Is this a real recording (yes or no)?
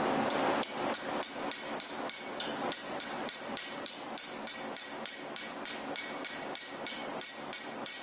yes